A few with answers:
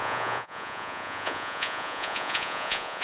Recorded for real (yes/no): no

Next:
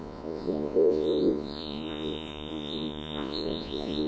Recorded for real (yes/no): no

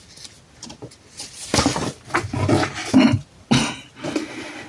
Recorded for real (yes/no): yes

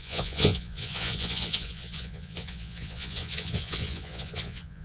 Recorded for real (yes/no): no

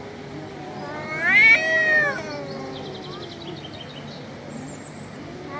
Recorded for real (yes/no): yes